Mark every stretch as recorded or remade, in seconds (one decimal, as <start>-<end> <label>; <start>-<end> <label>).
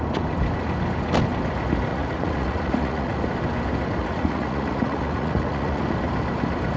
0.0-1.9 recorded; 1.9-3.2 remade; 3.2-4.0 recorded; 4.0-5.8 remade; 5.8-6.8 recorded